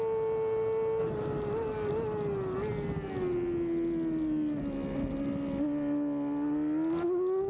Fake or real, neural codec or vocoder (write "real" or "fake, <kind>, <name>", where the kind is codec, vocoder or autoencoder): real